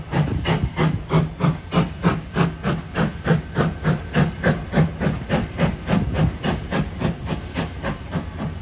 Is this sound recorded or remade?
recorded